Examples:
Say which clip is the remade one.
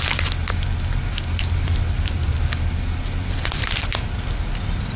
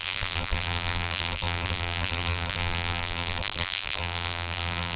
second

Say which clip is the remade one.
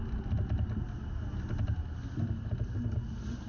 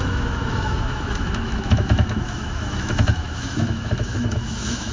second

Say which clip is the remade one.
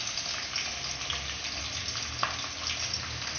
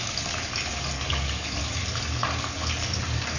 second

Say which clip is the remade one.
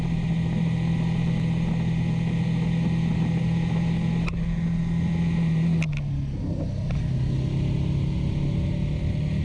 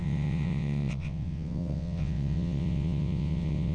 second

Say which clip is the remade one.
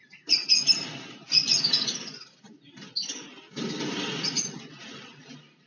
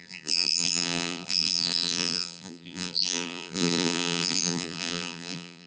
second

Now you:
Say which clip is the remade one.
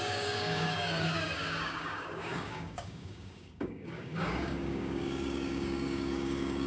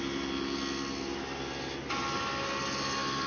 first